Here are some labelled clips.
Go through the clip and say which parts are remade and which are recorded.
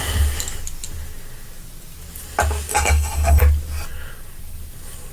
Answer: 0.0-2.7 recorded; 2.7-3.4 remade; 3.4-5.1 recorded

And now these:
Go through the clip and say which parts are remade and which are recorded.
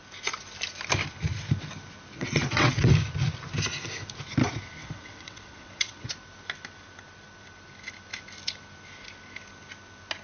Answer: 0.0-2.1 recorded; 2.1-2.9 remade; 2.9-4.8 recorded; 4.8-6.1 remade; 6.1-10.2 recorded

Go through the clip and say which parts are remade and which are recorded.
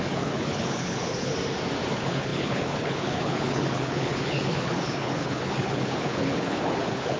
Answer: 0.0-1.3 remade; 1.3-1.9 recorded; 1.9-7.2 remade